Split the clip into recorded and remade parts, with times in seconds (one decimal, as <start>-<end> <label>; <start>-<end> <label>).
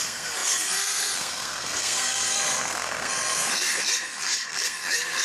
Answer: 0.0-5.2 remade